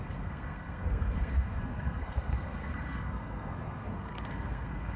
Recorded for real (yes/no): no